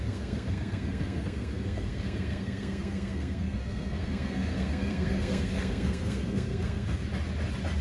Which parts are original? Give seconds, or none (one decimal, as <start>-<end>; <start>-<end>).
7.1-7.8